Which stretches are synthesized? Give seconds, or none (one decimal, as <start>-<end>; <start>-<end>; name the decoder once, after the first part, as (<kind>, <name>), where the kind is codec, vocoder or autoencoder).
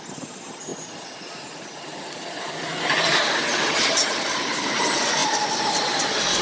none